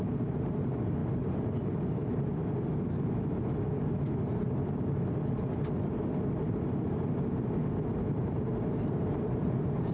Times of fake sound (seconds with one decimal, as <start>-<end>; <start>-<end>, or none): 0.0-2.4; 6.4-7.6; 8.2-9.9